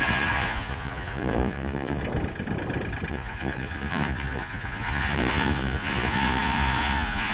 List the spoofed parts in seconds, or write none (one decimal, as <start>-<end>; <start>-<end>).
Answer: 0.0-2.0; 3.1-7.3